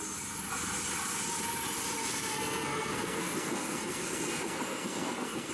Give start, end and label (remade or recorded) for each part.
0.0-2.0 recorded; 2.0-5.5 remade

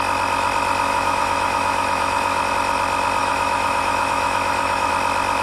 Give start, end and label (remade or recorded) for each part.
0.0-0.9 recorded; 0.9-2.5 remade; 2.5-3.2 recorded; 3.2-4.9 remade; 4.9-5.4 recorded